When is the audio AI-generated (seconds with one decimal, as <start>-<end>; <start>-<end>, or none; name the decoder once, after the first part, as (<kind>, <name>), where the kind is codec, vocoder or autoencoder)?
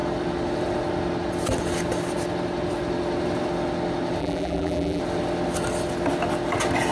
4.2-5.0 (vocoder, BigVGAN v2)